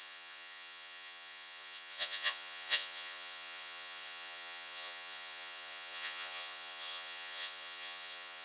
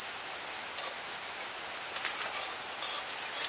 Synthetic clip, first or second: first